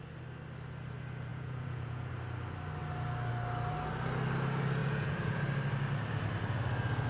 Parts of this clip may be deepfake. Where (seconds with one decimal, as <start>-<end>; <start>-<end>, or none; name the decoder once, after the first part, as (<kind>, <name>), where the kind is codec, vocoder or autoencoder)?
1.3-2.1 (vocoder, Vocos); 4.8-5.4